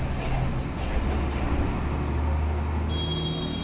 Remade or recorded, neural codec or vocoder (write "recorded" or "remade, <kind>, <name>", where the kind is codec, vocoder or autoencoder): recorded